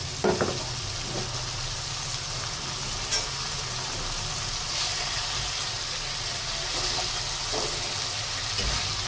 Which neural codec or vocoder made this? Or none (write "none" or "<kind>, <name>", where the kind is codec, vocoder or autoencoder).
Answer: none